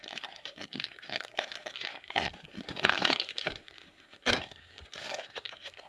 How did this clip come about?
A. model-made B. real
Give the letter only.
A